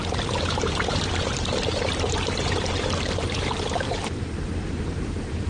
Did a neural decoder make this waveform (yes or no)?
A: yes